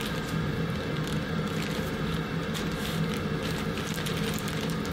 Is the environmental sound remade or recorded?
recorded